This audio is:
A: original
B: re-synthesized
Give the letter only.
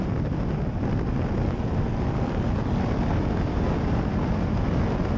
A